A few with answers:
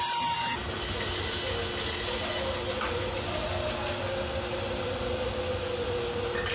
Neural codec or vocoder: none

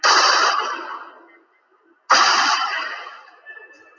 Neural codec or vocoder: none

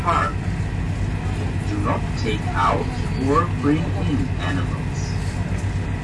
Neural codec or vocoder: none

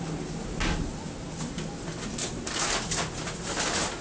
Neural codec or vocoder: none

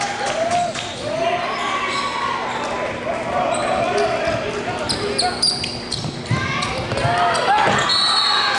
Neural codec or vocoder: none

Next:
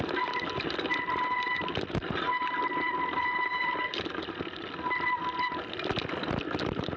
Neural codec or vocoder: none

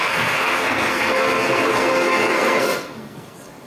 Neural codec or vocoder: codec, SNAC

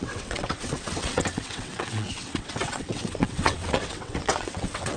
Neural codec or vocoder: vocoder, WaveNeXt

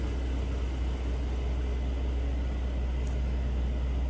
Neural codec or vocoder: none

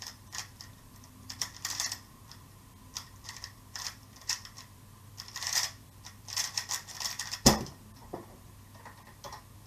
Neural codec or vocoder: vocoder, BigVGAN v2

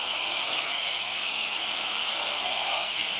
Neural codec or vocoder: codec, SNAC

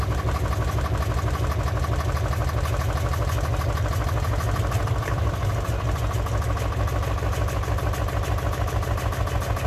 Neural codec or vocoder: none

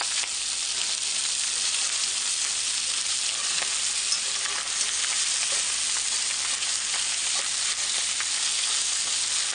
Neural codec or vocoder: none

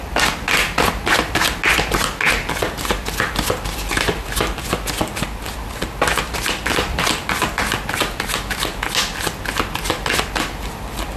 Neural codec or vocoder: none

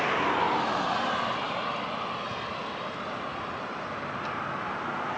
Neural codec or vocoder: none